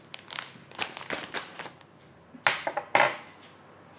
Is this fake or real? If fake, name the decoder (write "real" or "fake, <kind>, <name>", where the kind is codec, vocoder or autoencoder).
real